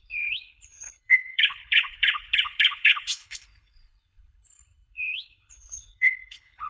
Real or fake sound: fake